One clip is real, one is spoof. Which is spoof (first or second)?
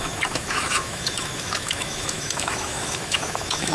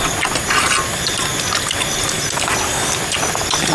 first